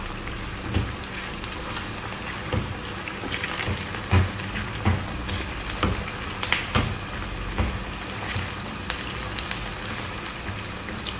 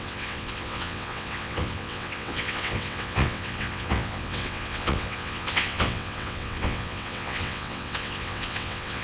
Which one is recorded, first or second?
first